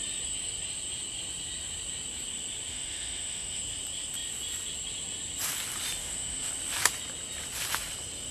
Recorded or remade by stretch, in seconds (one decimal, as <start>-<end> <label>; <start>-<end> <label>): 0.0-2.7 recorded; 2.7-3.6 remade; 3.6-6.0 recorded; 6.0-6.5 remade; 6.5-8.3 recorded